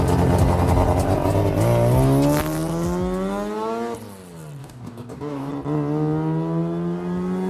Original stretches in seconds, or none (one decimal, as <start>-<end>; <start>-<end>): 0.0-4.6; 5.5-7.5